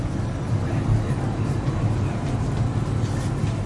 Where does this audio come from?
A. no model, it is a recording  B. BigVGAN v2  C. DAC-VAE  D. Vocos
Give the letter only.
A